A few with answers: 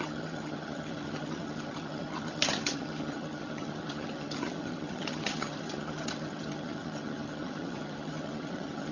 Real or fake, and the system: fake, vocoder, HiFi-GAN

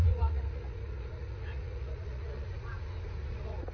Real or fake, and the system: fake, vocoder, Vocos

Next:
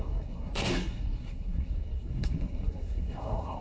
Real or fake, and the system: fake, codec, SNAC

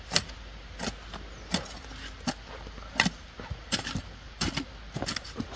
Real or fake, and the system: real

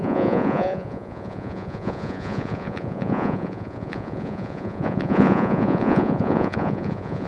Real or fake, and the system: fake, vocoder, Vocos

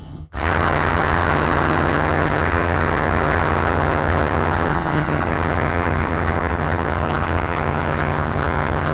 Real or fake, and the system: fake, vocoder, HiFi-GAN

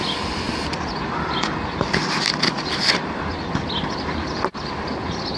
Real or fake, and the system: real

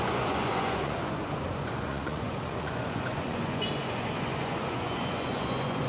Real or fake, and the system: fake, vocoder, Vocos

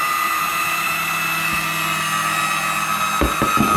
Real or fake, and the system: real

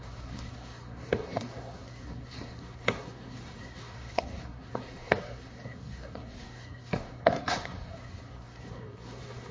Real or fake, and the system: fake, codec, SNAC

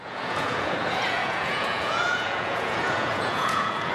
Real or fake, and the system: fake, vocoder, Vocos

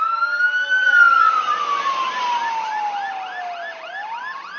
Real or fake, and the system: real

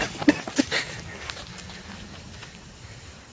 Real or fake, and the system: real